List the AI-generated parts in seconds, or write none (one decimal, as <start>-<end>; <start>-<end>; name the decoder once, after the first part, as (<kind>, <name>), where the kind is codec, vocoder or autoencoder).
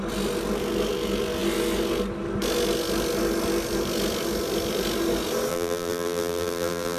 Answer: 5.5-7.0 (vocoder, BigVGAN v2)